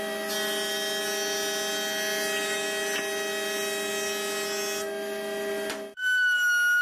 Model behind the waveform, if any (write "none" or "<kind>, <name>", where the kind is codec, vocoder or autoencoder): none